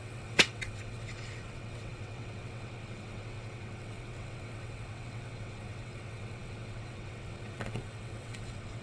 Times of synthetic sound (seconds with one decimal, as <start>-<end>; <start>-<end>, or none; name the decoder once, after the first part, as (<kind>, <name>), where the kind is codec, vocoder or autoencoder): 0.0-8.8 (vocoder, WaveNeXt)